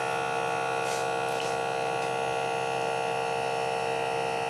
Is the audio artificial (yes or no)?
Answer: no